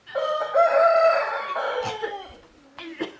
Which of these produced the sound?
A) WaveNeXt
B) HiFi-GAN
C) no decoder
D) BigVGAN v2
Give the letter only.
C